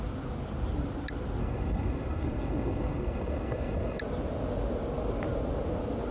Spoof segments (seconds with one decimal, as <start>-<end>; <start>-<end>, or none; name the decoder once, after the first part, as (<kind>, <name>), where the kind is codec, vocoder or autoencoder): 1.4-4.0 (codec, SNAC)